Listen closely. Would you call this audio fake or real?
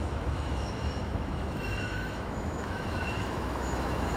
fake